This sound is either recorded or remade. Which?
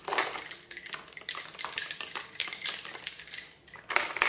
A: recorded